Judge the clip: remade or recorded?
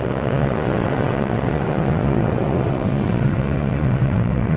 remade